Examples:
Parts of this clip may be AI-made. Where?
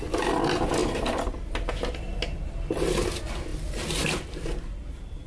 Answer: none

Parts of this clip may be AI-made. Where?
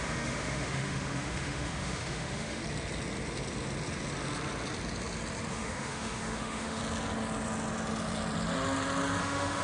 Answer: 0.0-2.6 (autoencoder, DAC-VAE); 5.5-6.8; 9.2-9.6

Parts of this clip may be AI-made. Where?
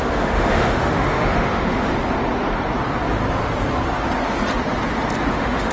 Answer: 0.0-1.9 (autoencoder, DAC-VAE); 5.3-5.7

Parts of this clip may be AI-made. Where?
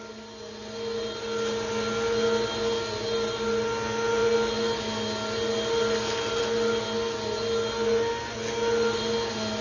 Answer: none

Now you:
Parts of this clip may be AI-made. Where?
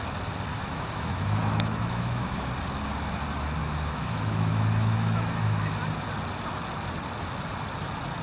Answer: 0.5-2.5 (autoencoder, DAC-VAE); 3.6-5.7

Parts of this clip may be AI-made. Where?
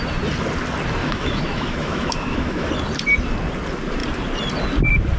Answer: 1.0-2.7 (autoencoder, DAC-VAE)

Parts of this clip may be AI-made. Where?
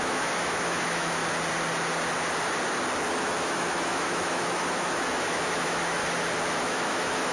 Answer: 0.0-1.2 (autoencoder, DAC-VAE); 3.2-6.0; 6.6-7.3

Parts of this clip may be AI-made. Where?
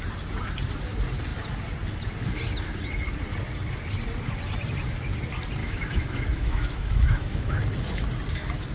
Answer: 5.6-7.6 (autoencoder, DAC-VAE)